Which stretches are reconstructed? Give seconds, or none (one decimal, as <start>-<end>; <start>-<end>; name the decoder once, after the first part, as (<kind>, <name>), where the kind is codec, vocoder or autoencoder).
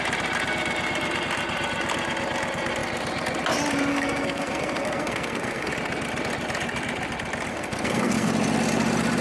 3.9-5.7 (codec, SNAC); 7.5-8.3